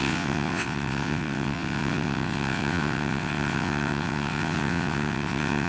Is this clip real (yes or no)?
no